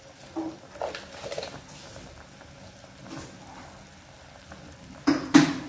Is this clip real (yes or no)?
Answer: yes